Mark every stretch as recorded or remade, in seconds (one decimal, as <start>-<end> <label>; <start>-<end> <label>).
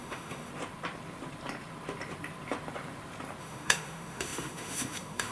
0.0-0.5 remade; 0.5-3.4 recorded; 3.4-5.3 remade